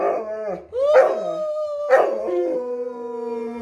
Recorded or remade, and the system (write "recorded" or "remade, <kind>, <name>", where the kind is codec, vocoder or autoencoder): recorded